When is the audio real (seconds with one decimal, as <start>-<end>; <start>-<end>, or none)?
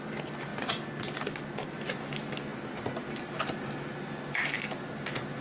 0.0-0.5; 1.0-5.4